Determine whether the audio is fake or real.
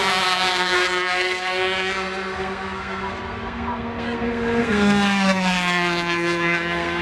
fake